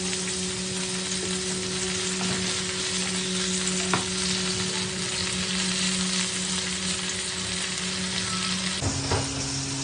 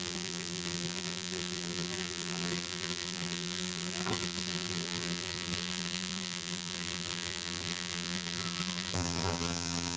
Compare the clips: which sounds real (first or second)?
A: first